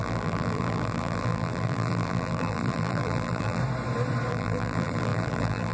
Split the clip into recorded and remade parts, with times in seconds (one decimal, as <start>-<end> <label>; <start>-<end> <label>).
0.0-3.6 remade; 3.6-4.3 recorded; 4.3-5.7 remade